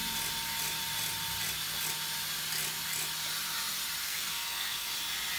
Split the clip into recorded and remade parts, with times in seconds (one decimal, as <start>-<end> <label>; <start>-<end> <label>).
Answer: 0.0-4.0 recorded; 4.0-4.9 remade; 4.9-5.4 recorded